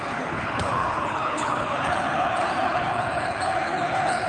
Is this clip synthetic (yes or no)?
yes